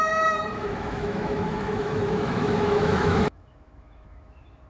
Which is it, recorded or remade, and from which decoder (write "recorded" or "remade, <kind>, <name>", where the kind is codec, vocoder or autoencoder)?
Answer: remade, autoencoder, DAC-VAE